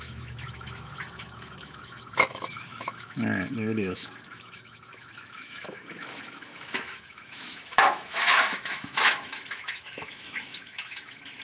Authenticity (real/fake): fake